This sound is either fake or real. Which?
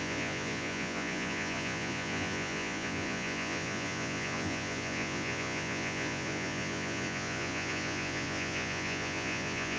fake